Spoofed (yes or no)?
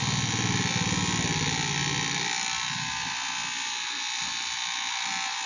no